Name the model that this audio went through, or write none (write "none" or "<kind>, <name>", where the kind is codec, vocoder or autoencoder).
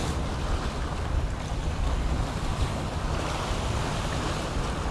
none